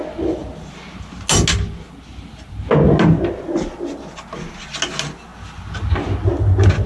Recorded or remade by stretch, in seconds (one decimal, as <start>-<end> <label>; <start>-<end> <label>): 0.0-6.9 recorded